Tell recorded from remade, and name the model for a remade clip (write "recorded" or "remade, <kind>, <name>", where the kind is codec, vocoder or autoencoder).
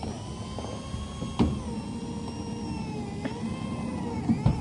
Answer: recorded